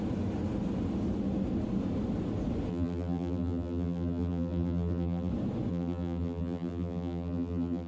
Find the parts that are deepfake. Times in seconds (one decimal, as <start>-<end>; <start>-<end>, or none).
2.7-5.3; 5.7-7.9

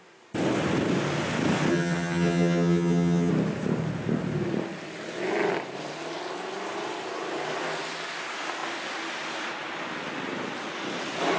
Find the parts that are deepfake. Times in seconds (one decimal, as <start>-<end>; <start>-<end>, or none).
1.7-3.3

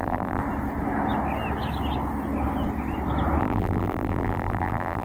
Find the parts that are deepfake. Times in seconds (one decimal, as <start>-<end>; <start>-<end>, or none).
0.0-0.4; 3.4-5.0